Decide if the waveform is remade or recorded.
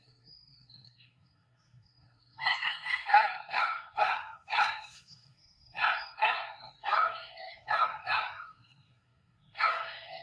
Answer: remade